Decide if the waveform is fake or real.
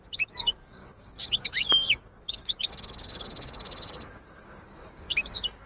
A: fake